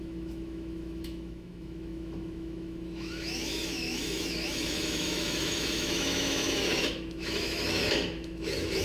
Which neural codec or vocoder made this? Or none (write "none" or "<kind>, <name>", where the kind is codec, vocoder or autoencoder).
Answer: autoencoder, DAC-VAE